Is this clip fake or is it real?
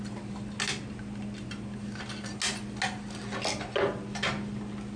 real